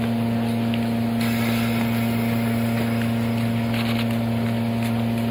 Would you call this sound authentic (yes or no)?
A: yes